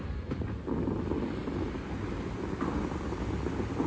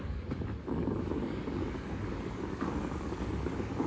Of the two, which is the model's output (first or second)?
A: second